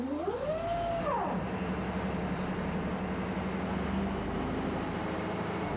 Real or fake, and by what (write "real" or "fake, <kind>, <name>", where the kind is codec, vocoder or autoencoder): real